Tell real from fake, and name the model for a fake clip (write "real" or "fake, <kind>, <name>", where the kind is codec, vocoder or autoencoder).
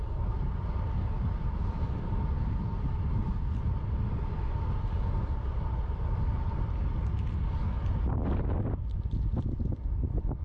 real